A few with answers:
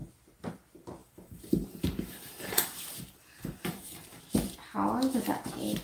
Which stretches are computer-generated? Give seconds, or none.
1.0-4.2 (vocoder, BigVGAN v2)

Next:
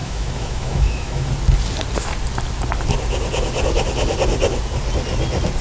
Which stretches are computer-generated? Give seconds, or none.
0.0-1.3 (autoencoder, DAC-VAE)